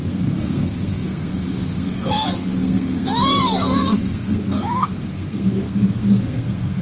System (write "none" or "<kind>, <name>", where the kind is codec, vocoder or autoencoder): codec, SNAC